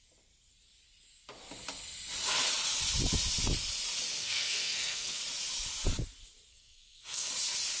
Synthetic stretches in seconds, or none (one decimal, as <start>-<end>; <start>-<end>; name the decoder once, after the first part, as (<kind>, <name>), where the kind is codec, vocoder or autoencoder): 4.2-5.2 (codec, SNAC); 6.5-7.3